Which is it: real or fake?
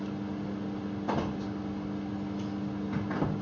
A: real